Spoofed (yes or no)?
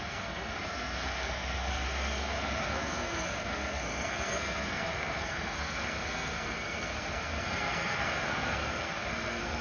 yes